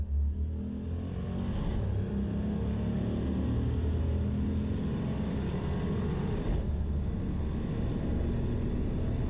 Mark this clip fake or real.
real